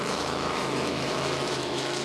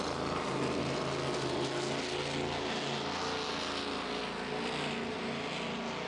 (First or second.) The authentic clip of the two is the second